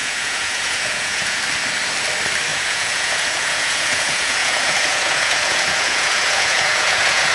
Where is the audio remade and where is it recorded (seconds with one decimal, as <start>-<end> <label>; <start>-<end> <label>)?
0.0-1.4 remade; 1.4-2.5 recorded; 2.5-7.3 remade